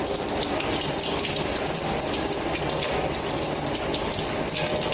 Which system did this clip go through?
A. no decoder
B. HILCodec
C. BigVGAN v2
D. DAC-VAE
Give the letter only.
A